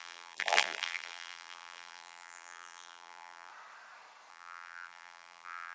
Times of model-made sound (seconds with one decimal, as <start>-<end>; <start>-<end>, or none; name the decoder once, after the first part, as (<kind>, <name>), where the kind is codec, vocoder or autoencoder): 0.0-3.5 (vocoder, BigVGAN v2); 4.3-5.7